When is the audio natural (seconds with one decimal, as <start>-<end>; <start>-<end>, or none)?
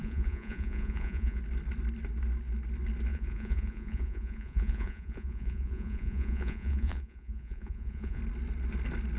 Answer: 1.4-3.1; 8.2-9.2